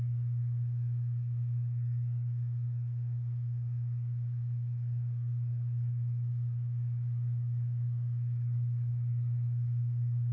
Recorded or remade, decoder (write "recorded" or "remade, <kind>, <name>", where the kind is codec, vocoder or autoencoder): remade, codec, SNAC